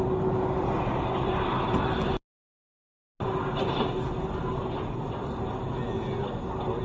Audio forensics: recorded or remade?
recorded